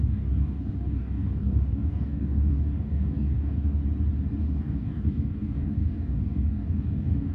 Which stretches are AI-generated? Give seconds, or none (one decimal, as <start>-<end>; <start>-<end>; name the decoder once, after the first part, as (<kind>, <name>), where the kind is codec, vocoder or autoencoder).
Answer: 0.0-3.8 (codec, DAC); 4.4-7.3

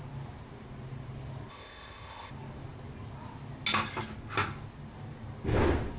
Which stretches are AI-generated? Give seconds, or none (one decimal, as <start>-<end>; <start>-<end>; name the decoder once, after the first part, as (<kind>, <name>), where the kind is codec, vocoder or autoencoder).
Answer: 1.5-2.3 (codec, ZipCodec)

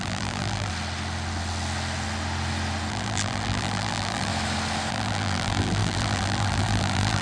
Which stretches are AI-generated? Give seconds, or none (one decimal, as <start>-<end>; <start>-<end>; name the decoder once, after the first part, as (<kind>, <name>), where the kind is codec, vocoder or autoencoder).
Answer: 0.0-0.7 (vocoder, BigVGAN v2); 2.9-4.3; 4.9-7.2

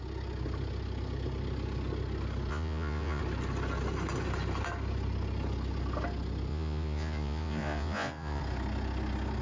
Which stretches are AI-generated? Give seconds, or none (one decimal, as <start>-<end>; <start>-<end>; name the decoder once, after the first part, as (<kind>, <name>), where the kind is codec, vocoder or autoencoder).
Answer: 2.5-3.2 (vocoder, Vocos); 6.5-8.4